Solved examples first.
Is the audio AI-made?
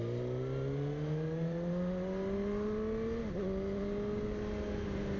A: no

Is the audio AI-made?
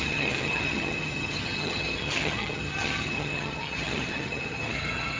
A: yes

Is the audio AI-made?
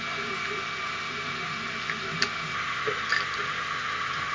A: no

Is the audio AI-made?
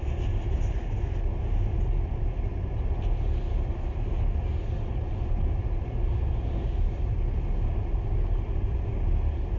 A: no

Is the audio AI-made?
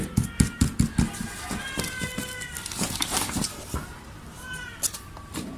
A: yes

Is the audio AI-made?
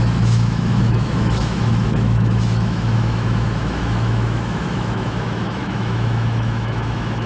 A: yes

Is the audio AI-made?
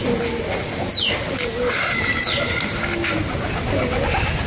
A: no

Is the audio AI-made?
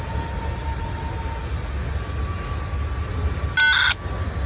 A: no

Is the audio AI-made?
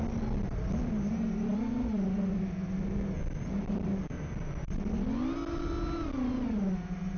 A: no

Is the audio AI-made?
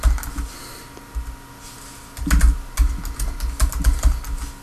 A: no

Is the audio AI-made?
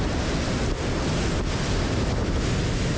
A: no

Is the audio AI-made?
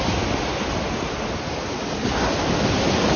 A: no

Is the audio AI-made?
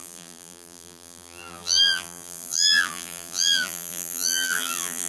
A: yes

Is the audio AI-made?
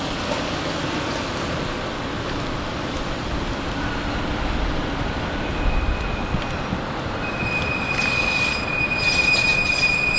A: no